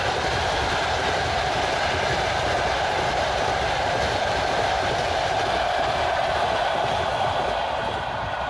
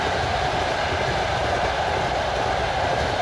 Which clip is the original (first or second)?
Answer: second